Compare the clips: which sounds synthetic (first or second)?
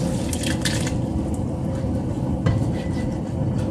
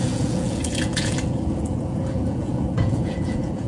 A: second